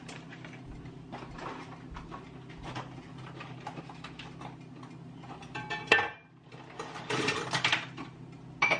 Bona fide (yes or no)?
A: yes